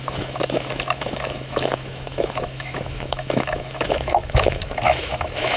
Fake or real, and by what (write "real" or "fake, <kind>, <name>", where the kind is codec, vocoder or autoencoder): fake, autoencoder, DAC-VAE